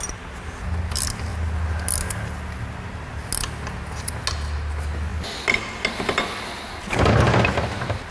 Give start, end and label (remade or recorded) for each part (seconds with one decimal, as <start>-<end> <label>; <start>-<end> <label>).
0.0-8.1 recorded